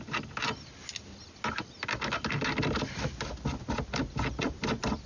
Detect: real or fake real